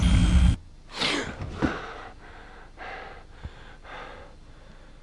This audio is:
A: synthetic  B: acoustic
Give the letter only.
B